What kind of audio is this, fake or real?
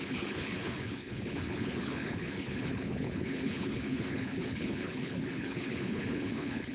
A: fake